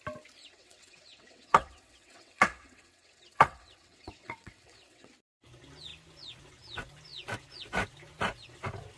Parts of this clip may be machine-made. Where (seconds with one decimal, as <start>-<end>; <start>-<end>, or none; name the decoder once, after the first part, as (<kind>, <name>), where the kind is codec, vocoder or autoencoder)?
0.4-5.1 (vocoder, WaveNeXt)